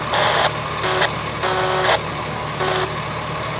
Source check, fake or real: real